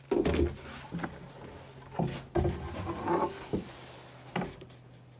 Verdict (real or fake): real